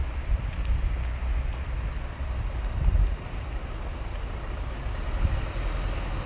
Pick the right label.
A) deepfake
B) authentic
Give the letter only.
B